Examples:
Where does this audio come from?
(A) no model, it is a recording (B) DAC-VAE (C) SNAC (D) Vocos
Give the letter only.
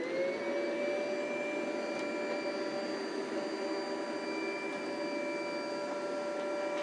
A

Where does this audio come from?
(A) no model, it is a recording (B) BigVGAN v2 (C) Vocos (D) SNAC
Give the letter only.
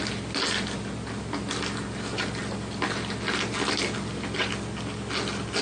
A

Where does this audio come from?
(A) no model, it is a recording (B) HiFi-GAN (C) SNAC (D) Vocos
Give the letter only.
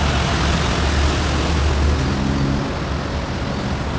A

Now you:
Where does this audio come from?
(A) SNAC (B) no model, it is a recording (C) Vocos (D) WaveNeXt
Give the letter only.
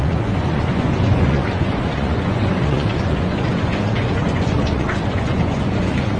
C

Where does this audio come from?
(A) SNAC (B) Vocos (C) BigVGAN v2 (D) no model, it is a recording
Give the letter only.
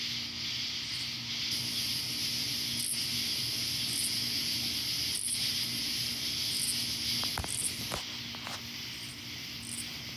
D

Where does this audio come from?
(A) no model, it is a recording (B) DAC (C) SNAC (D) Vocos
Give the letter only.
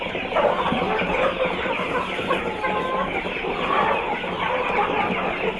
A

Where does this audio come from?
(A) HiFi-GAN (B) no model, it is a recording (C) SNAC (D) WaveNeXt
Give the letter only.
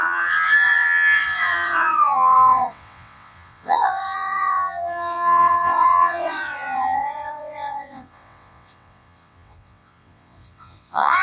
D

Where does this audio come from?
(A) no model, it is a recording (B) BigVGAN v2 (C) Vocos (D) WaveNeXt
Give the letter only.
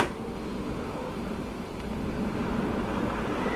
A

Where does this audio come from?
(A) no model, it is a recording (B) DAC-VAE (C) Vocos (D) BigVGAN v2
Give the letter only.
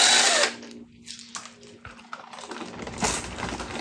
A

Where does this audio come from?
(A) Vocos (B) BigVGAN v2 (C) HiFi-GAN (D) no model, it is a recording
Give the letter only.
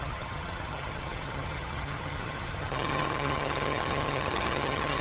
C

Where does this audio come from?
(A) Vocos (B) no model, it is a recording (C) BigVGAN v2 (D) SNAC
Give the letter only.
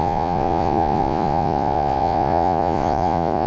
A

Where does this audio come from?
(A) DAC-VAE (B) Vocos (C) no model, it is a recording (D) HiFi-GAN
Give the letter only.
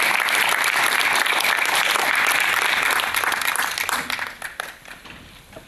C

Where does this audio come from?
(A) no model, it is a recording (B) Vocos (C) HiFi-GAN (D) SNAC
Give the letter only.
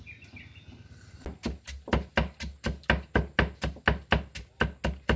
A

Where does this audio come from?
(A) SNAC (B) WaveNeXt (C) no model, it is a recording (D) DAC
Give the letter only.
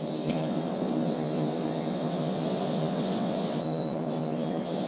B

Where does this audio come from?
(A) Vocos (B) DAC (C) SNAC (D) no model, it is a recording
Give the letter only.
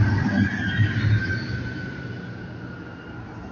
D